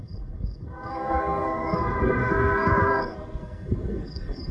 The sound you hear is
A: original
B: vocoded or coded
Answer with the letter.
B